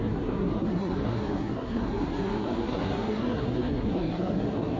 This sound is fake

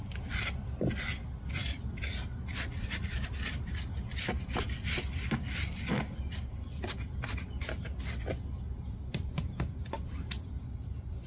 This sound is real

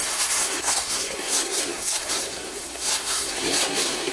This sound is fake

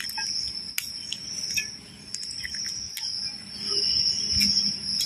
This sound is real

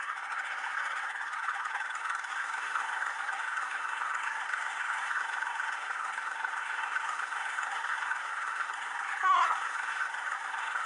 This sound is fake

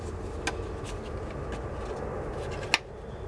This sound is real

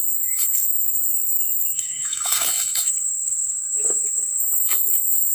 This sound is fake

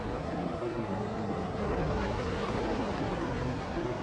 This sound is fake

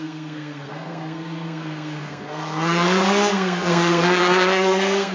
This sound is fake